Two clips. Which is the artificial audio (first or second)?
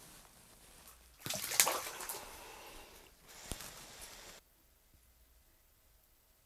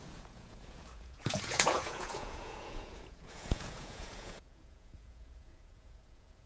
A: second